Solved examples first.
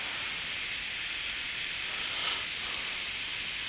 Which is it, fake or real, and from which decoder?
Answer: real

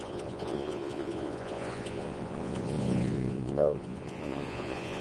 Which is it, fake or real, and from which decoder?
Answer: fake, vocoder, Vocos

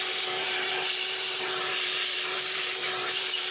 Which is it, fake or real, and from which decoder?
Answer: fake, vocoder, BigVGAN v2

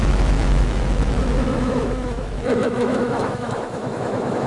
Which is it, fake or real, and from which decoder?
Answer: fake, autoencoder, DAC-VAE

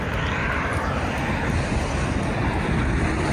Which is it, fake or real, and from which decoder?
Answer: fake, vocoder, BigVGAN v2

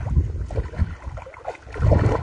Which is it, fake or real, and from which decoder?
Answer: real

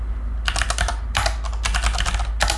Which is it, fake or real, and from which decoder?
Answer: real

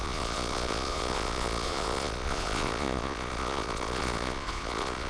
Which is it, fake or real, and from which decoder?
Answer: fake, vocoder, Vocos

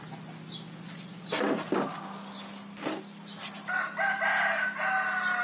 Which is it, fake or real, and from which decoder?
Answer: real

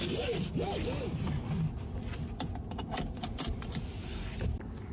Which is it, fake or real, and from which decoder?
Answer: real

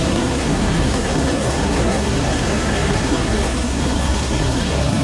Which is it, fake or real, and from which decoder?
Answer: fake, codec, SNAC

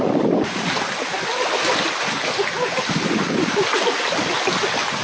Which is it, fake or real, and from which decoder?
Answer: real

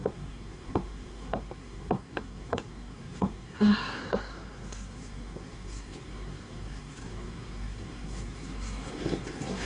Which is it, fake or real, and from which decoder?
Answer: fake, codec, SNAC